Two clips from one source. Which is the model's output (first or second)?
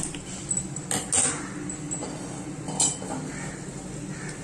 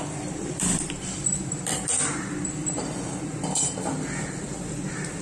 second